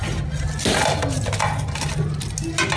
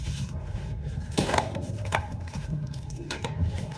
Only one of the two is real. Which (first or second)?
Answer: first